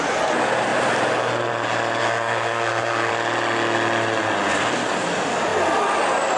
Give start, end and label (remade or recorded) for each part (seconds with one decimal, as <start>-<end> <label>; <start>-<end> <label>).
0.0-2.0 recorded; 2.0-3.1 remade; 3.1-6.4 recorded